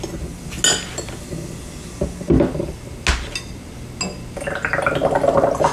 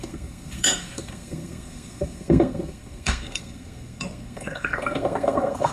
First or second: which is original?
first